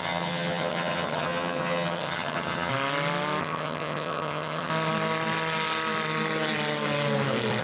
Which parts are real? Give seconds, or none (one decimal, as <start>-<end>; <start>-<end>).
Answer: 2.7-3.4; 4.7-7.6